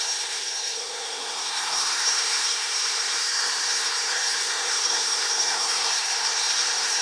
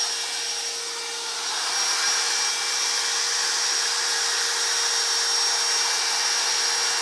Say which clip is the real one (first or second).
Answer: second